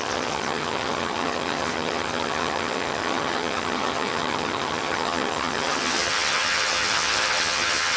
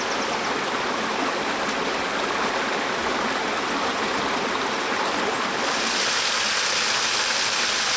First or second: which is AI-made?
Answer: first